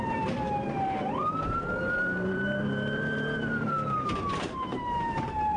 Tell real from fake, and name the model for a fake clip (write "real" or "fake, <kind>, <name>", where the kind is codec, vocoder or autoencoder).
fake, vocoder, BigVGAN v2